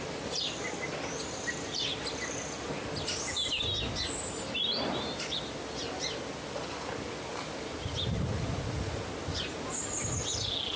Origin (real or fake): real